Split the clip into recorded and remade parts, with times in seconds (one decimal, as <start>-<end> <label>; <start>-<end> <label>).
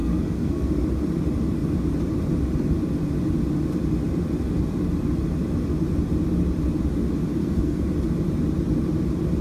0.0-0.7 remade; 0.7-7.4 recorded; 7.4-7.9 remade; 7.9-9.4 recorded